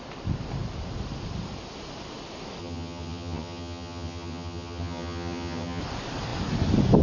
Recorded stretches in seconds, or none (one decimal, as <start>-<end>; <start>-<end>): 0.0-2.6; 5.8-7.0